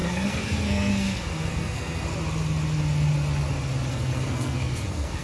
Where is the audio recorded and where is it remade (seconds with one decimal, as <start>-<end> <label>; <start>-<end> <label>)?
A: 0.0-2.1 remade; 2.1-3.9 recorded; 3.9-5.2 remade